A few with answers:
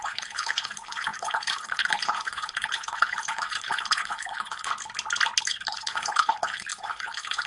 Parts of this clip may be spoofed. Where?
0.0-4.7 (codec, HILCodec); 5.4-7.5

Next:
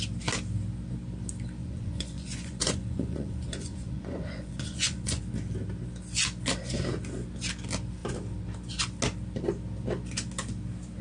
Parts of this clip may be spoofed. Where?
1.6-5.2 (vocoder, Vocos)

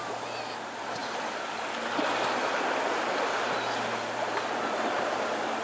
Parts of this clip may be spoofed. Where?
none

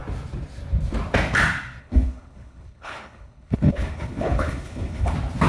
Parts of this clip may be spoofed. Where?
1.8-5.1 (codec, HILCodec)

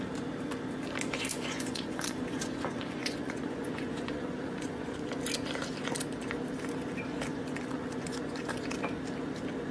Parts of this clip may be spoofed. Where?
1.3-5.1 (vocoder, Vocos); 7.3-8.7

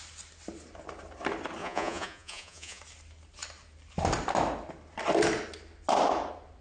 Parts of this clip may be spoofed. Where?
1.6-2.8 (vocoder, Vocos)